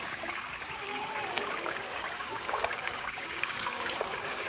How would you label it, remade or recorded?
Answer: remade